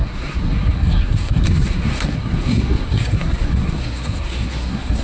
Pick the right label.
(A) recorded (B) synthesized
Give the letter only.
B